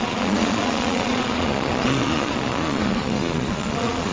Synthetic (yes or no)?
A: yes